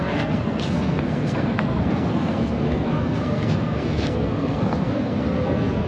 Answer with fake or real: fake